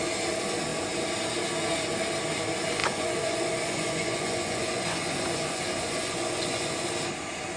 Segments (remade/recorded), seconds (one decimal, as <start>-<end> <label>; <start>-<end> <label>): 0.0-2.8 recorded; 2.8-6.9 remade; 6.9-7.6 recorded